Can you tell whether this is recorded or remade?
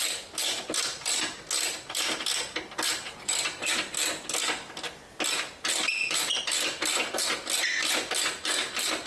recorded